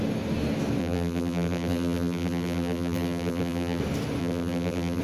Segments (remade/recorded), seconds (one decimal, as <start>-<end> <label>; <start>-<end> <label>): 0.0-0.8 recorded; 0.8-3.8 remade; 3.8-4.2 recorded; 4.2-5.0 remade